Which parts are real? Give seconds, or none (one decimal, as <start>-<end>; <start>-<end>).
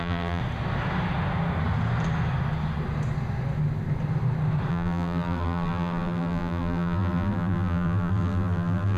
0.4-4.7